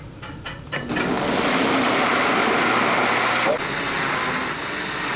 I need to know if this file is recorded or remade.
recorded